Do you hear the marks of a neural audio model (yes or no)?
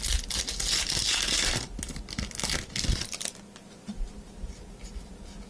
no